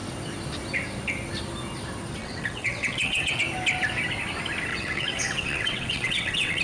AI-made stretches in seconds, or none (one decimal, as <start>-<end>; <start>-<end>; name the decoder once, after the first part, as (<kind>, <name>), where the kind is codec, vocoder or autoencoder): 2.2-3.4 (vocoder, WaveNeXt); 4.7-6.6